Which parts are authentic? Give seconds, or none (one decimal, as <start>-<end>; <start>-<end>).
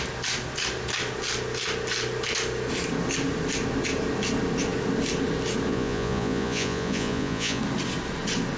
0.0-5.7; 7.6-8.6